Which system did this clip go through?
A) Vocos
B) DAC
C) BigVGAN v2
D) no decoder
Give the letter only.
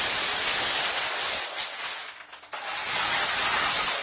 D